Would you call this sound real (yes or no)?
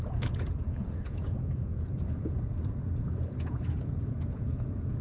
no